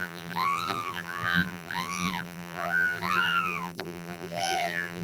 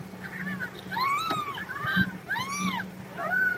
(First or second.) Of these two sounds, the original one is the second